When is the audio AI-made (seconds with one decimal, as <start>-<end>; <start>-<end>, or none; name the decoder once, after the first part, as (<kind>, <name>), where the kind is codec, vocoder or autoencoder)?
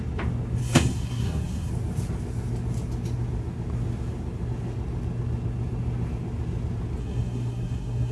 0.6-1.7 (codec, SNAC); 7.0-8.1